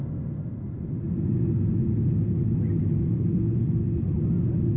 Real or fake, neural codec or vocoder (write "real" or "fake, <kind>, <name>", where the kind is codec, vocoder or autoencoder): real